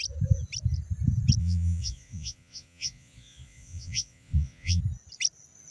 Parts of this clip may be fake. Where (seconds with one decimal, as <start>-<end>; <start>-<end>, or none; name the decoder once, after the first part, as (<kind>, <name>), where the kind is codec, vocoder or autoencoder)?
1.4-4.8 (vocoder, Vocos)